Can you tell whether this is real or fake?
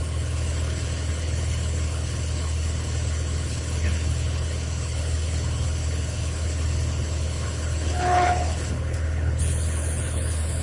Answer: fake